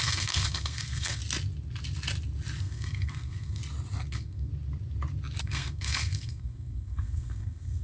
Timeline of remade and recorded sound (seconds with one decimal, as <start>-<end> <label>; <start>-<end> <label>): 0.0-1.2 remade; 1.2-2.6 recorded; 2.6-3.6 remade; 3.6-4.1 recorded; 4.1-4.5 remade; 4.5-5.4 recorded; 5.4-7.8 remade